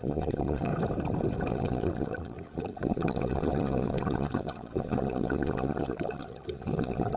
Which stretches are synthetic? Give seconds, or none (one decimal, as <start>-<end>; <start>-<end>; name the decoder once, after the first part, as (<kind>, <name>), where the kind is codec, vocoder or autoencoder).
0.0-0.7 (vocoder, Vocos); 1.5-7.2